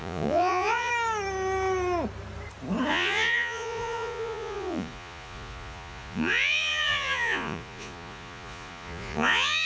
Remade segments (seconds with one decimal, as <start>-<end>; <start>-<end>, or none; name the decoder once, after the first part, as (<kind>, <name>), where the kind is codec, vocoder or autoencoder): 0.0-0.9 (vocoder, Vocos); 2.9-9.7

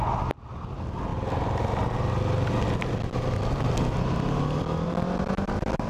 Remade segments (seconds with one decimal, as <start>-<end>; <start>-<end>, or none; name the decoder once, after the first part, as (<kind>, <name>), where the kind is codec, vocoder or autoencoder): none

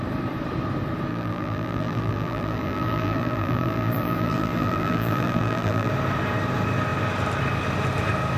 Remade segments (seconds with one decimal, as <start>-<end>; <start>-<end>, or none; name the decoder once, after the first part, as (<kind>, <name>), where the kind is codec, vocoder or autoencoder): 1.1-5.9 (vocoder, BigVGAN v2)

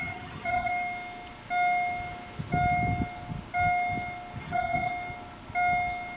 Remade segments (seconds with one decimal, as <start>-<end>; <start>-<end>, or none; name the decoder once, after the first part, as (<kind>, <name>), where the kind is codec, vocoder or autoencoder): 0.0-0.7 (vocoder, HiFi-GAN); 4.4-4.9

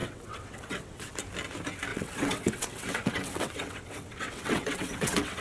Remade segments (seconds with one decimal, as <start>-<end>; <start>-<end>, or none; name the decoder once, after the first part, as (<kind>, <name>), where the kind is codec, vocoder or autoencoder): 0.0-1.1 (vocoder, WaveNeXt); 1.9-5.4